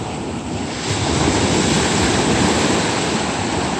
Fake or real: real